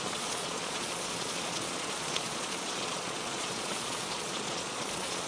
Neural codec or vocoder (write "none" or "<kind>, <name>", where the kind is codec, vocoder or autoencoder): vocoder, Vocos